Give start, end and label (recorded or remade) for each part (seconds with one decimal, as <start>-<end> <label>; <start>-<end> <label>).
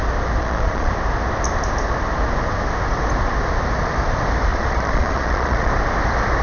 0.0-0.4 recorded; 0.4-0.9 remade; 0.9-4.5 recorded; 4.5-5.7 remade; 5.7-6.4 recorded